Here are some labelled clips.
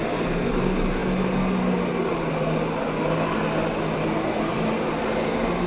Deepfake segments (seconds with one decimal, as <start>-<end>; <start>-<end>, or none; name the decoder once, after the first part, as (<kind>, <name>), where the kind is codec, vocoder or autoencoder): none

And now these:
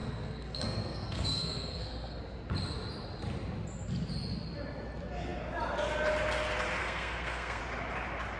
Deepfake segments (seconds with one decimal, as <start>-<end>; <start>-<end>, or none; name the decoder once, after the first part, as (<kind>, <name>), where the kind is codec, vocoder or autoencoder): 0.0-2.2 (codec, SNAC); 6.8-7.6

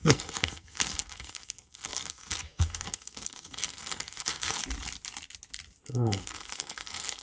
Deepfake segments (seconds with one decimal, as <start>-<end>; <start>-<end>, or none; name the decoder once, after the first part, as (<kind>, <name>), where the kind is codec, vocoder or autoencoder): 0.0-4.6 (codec, SNAC); 5.9-7.2

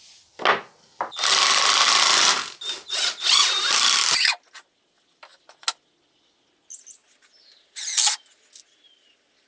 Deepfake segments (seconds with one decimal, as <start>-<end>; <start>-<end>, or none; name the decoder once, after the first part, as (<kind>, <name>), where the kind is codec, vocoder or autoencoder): none